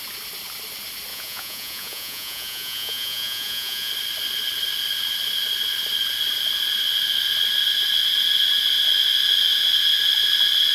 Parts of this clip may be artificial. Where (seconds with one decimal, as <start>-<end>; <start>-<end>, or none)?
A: 1.1-3.9